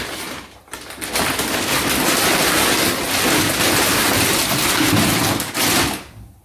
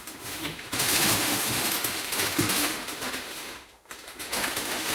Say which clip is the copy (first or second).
second